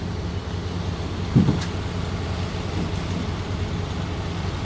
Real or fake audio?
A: real